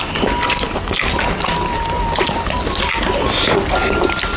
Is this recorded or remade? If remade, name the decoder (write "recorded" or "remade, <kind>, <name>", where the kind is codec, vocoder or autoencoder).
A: recorded